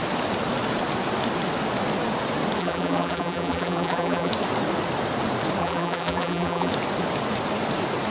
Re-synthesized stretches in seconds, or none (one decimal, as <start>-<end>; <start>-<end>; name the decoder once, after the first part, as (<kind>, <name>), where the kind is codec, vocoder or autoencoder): 2.6-4.3 (vocoder, BigVGAN v2); 5.6-6.7